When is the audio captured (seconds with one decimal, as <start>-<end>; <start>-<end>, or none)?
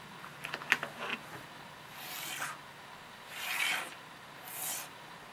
0.0-5.3